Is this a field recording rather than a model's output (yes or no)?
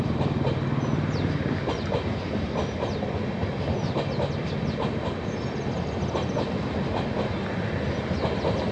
yes